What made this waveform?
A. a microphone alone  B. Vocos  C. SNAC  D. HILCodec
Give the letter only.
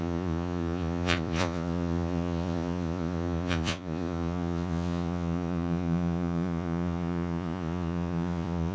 B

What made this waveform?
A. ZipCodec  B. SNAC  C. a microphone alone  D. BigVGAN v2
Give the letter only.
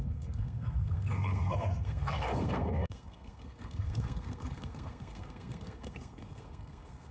B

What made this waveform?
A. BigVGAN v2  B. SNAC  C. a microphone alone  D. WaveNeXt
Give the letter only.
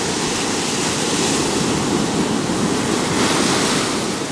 C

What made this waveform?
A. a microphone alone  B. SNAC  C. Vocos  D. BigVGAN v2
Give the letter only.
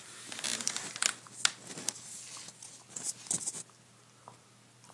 A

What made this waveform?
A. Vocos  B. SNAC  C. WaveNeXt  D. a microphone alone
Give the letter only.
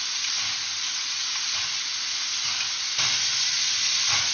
D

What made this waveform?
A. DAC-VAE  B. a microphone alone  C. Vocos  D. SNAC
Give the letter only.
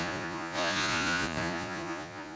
C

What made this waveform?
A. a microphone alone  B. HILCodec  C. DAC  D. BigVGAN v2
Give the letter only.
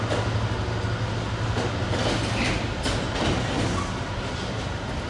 A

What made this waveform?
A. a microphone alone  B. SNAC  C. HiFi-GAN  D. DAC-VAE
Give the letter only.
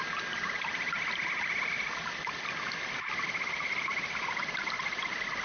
A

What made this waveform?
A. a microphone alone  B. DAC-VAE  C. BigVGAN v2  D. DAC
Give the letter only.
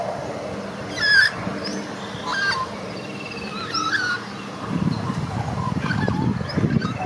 A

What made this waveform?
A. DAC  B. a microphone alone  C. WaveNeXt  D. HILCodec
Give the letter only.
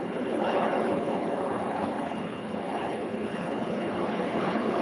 D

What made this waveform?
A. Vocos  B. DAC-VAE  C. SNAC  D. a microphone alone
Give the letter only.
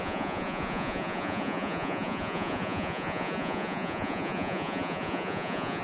A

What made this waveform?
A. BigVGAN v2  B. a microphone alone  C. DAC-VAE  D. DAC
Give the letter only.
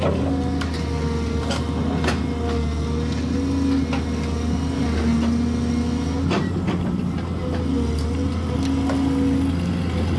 B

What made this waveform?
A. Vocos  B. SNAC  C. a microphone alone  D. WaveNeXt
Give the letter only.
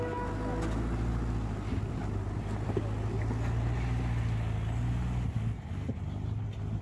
C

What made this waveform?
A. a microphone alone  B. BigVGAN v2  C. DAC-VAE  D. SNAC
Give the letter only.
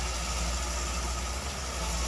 A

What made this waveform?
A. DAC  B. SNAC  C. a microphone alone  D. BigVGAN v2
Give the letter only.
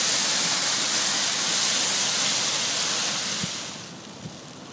C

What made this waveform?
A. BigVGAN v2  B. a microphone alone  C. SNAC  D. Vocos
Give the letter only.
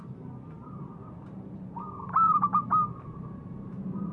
A